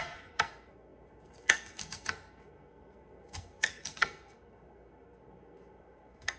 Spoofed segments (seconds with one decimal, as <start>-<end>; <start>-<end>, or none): 0.0-6.4